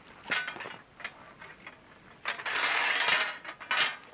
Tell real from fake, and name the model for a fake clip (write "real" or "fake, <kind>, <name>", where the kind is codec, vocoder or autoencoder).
real